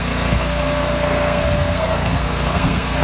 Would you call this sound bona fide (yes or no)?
no